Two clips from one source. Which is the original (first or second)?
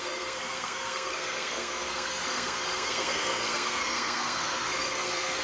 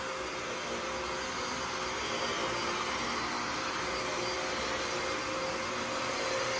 second